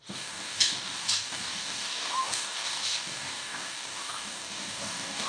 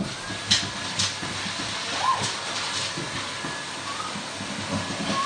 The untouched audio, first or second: second